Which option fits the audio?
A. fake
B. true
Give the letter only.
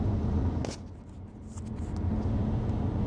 B